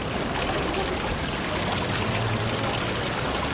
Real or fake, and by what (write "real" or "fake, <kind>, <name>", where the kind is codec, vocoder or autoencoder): real